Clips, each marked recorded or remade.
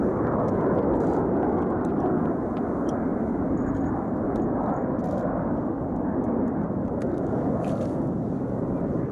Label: recorded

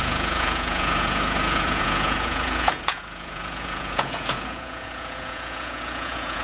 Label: remade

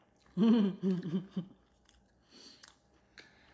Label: recorded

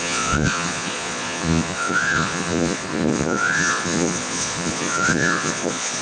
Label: remade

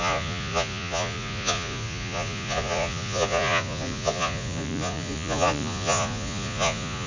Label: remade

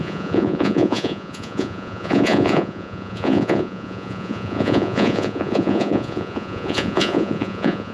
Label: remade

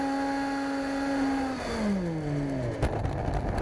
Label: recorded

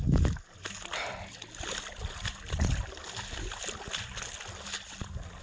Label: recorded